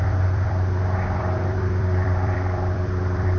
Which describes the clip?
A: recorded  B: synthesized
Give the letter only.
B